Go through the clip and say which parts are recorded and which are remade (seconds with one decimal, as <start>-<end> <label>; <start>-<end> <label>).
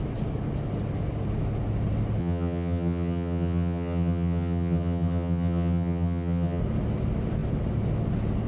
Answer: 0.0-2.2 recorded; 2.2-6.6 remade; 6.6-8.5 recorded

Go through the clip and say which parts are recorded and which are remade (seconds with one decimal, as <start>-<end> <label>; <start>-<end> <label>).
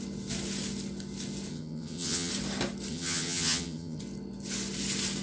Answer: 0.0-1.5 recorded; 1.5-2.3 remade; 2.3-2.9 recorded; 2.9-4.0 remade; 4.0-5.2 recorded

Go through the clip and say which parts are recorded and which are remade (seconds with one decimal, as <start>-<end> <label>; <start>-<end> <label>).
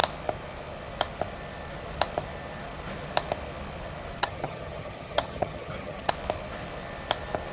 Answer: 0.0-4.2 recorded; 4.2-6.1 remade; 6.1-7.5 recorded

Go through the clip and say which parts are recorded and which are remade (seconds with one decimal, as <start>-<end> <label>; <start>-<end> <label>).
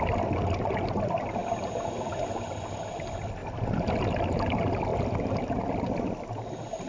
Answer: 0.0-6.9 recorded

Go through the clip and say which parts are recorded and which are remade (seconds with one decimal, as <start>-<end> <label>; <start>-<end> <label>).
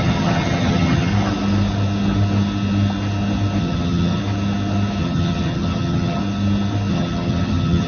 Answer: 0.0-1.1 remade; 1.1-3.6 recorded; 3.6-4.2 remade; 4.2-5.0 recorded; 5.0-6.2 remade; 6.2-6.9 recorded; 6.9-7.9 remade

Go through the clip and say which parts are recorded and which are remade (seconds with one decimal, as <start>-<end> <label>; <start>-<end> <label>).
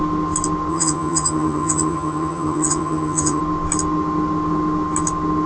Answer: 0.0-0.7 recorded; 0.7-3.4 remade; 3.4-5.5 recorded